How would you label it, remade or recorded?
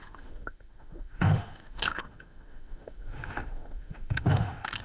remade